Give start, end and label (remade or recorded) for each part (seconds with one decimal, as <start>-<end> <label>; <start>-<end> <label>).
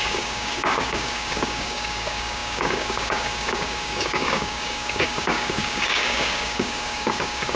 0.0-7.6 remade